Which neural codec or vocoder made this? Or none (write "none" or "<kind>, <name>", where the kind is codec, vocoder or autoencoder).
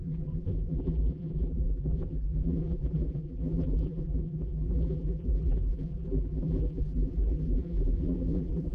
vocoder, BigVGAN v2